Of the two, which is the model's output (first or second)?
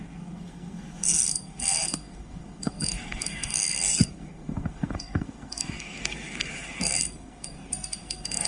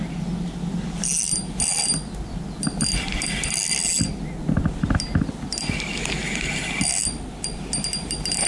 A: first